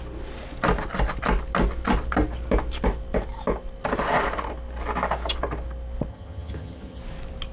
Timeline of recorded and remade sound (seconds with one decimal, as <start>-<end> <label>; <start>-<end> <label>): 0.0-6.1 recorded; 6.1-7.0 remade; 7.0-7.5 recorded